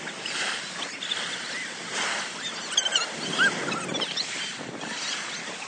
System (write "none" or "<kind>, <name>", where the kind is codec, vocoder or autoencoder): none